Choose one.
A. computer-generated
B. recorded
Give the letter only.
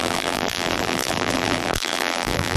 A